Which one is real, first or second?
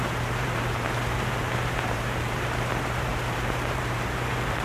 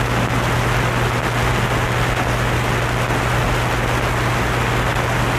second